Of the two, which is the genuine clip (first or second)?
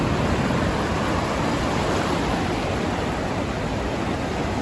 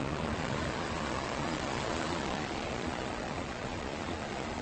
first